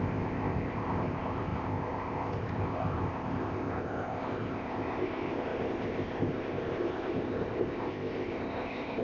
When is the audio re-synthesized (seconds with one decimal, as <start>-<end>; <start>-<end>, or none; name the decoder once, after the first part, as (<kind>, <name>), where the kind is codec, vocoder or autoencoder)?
0.0-9.0 (codec, ZipCodec)